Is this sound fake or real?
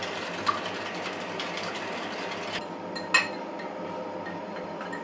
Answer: real